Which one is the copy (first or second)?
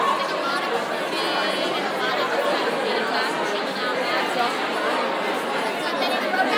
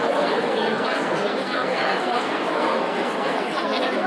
second